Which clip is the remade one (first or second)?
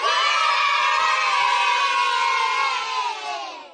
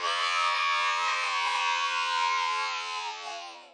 second